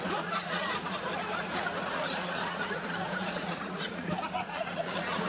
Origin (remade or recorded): remade